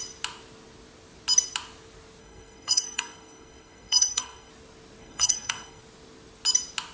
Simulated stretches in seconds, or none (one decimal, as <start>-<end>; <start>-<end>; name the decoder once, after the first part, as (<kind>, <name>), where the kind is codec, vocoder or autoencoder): 2.2-4.5 (codec, SNAC); 5.0-5.8